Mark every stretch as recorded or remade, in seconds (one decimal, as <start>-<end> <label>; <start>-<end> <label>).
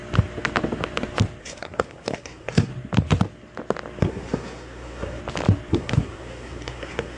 0.0-1.4 recorded; 1.4-2.7 remade; 2.7-4.0 recorded; 4.0-5.2 remade; 5.2-5.7 recorded; 5.7-7.2 remade